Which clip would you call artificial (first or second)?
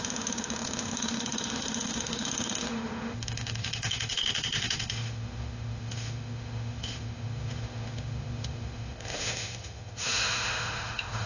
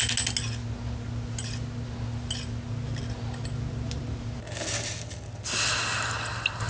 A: first